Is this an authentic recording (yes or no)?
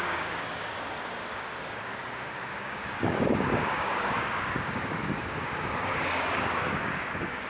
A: no